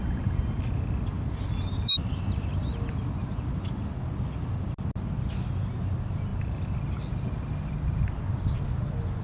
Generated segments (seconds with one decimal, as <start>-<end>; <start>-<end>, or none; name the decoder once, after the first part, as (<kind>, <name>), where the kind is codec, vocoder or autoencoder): none